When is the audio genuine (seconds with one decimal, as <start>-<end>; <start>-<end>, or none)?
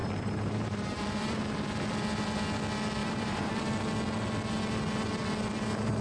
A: 1.4-3.0; 3.7-6.0